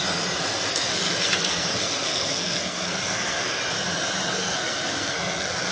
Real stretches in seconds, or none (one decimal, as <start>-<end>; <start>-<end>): 0.0-0.7; 3.6-4.4